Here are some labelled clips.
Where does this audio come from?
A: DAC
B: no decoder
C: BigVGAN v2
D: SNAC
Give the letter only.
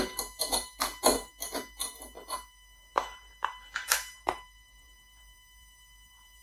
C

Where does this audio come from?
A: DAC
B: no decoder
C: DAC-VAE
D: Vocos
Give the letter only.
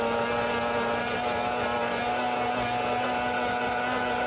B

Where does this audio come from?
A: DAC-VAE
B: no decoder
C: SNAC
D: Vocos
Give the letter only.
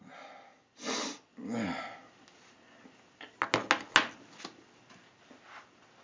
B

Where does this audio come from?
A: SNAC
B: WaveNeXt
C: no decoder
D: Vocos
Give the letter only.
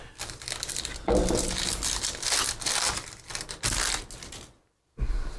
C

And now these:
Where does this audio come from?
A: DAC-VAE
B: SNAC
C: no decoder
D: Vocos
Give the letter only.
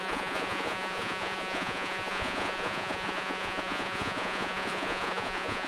D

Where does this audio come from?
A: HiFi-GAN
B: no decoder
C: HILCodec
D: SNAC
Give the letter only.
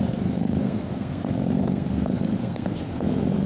D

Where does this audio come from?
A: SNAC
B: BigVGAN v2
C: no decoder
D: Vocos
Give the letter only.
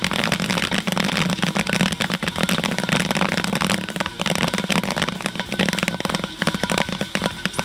C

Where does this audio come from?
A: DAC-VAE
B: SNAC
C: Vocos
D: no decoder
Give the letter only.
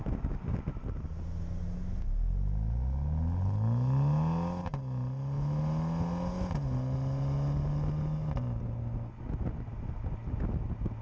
D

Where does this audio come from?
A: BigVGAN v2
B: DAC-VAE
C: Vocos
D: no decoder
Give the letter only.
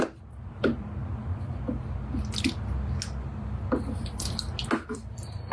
D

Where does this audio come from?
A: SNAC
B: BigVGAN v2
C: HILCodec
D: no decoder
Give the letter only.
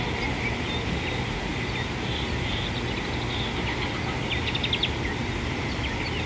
D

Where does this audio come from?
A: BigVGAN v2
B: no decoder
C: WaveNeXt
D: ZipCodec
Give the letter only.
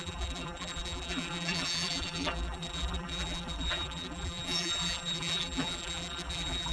A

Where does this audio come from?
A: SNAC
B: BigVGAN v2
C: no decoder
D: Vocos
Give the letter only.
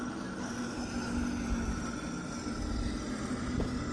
C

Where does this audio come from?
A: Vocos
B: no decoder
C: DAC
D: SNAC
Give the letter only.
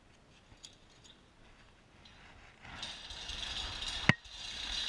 B